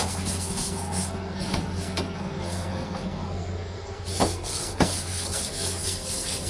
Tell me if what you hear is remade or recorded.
remade